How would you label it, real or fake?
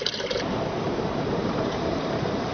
fake